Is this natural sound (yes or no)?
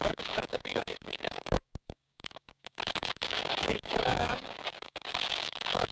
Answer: no